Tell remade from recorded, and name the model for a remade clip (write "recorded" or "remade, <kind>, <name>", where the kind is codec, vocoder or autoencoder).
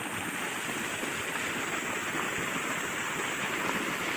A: recorded